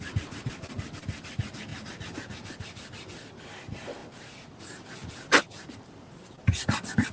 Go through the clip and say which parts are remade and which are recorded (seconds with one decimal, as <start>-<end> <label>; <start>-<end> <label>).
0.0-7.1 remade

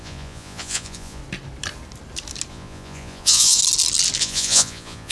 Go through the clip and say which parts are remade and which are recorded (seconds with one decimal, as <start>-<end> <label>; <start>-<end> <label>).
0.0-1.2 remade; 1.2-2.5 recorded; 2.5-3.6 remade; 3.6-4.2 recorded; 4.2-5.1 remade

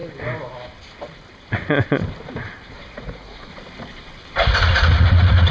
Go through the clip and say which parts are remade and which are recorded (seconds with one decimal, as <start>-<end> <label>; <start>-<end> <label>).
0.0-2.7 recorded; 2.7-3.5 remade; 3.5-4.4 recorded; 4.4-5.5 remade

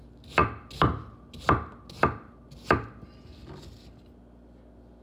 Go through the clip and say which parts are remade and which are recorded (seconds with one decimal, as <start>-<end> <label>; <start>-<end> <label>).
0.0-5.0 recorded

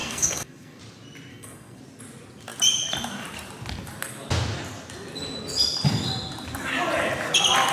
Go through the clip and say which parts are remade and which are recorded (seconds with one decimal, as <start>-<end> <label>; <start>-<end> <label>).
0.0-0.8 remade; 0.8-1.3 recorded; 1.3-1.8 remade; 1.8-7.7 recorded